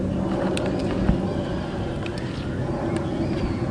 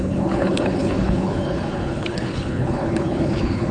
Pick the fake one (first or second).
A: second